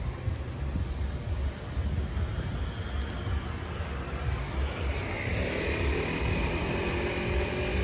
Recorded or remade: recorded